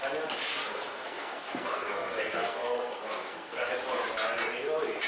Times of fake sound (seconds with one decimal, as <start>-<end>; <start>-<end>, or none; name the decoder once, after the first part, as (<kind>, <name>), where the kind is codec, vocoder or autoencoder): 0.6-3.7 (codec, SNAC)